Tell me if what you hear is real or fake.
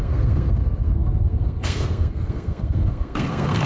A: fake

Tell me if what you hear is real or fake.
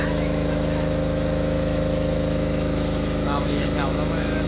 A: fake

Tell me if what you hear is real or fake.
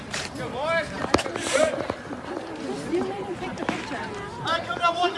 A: fake